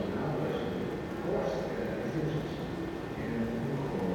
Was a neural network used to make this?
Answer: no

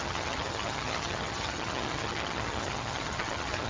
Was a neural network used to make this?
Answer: yes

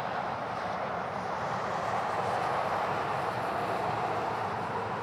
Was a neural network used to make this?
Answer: yes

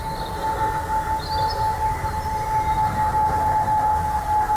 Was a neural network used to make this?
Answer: no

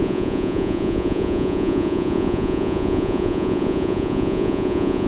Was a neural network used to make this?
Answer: yes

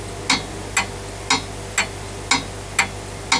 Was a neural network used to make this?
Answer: no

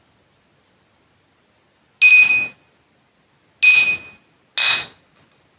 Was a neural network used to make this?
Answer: no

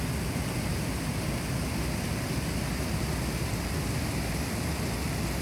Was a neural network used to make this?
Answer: no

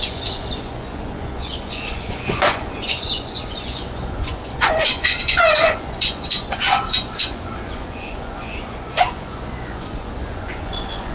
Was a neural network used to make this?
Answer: yes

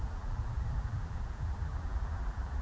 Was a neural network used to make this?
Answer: yes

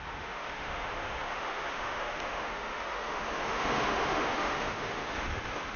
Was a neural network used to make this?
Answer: yes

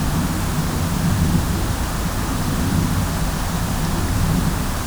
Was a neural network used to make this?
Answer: no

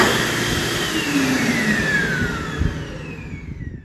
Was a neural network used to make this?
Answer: yes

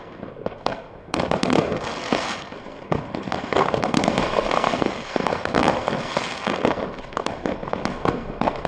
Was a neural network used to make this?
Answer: yes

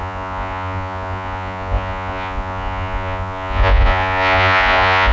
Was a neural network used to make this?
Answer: yes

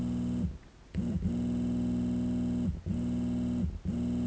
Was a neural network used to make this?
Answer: no